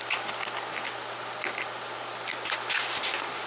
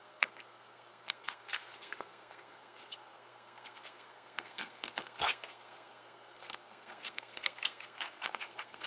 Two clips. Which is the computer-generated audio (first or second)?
second